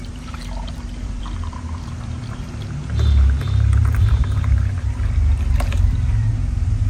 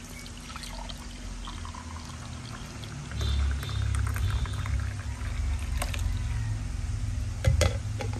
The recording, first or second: second